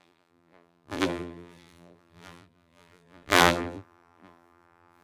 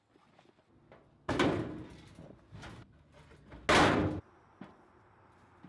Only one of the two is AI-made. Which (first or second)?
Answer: first